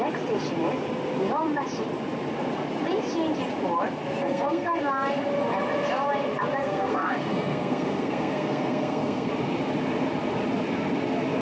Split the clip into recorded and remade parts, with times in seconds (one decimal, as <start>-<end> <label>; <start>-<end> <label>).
0.0-4.2 recorded; 4.2-4.8 remade; 4.8-6.6 recorded; 6.6-9.3 remade; 9.3-11.4 recorded